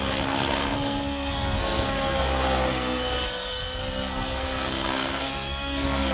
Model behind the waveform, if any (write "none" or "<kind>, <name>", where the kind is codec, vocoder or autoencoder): codec, SNAC